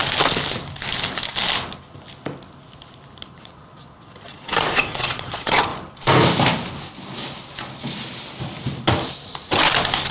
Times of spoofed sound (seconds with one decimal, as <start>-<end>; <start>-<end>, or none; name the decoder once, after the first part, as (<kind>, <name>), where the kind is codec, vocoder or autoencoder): 3.3-5.7 (vocoder, Vocos)